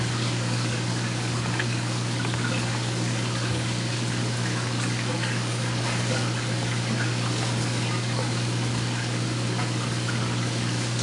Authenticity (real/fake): fake